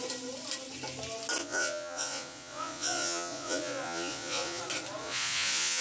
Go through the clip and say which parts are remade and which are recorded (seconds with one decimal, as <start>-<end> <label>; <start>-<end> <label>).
0.0-1.4 recorded; 1.4-4.6 remade; 4.6-5.0 recorded; 5.0-5.8 remade

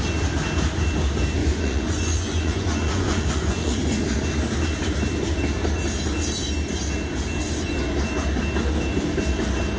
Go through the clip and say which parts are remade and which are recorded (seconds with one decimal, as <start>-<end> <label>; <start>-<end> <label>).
0.0-1.4 recorded; 1.4-4.0 remade; 4.0-9.8 recorded